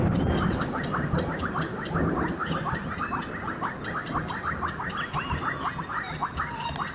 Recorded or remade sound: recorded